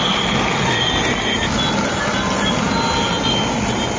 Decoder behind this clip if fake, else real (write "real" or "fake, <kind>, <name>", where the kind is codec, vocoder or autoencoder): real